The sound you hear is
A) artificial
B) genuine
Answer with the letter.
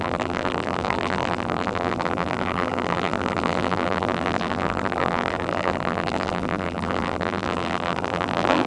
A